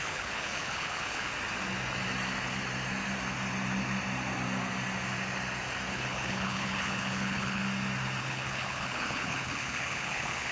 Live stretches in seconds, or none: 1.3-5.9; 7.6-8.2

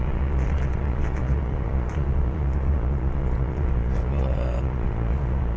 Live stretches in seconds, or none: none

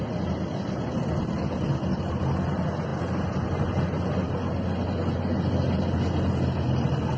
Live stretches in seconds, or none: 0.0-7.2

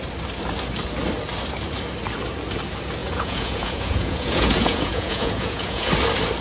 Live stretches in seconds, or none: 0.0-3.0; 5.9-6.4

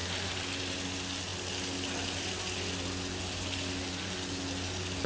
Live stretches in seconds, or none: 0.0-5.1